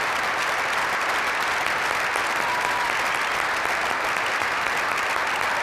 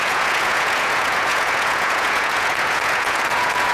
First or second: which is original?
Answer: first